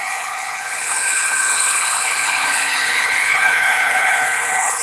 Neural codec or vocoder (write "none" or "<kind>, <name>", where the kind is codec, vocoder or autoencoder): codec, HILCodec